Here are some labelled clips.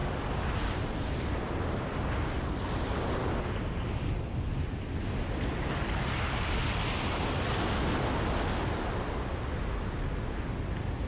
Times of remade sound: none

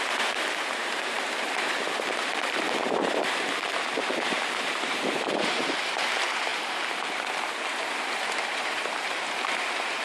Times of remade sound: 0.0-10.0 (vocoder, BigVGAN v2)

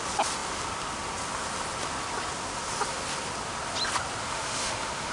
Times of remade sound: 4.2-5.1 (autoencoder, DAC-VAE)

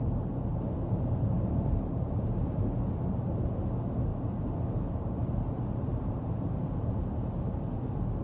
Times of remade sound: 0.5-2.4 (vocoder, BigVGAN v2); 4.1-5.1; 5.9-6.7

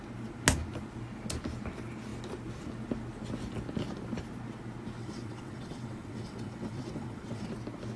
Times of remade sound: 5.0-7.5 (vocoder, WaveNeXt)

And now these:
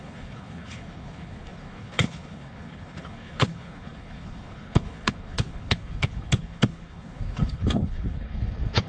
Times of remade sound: 0.0-8.9 (codec, HILCodec)

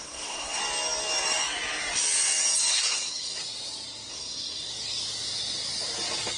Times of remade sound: 0.0-0.6 (codec, SNAC); 2.7-3.4; 4.1-4.7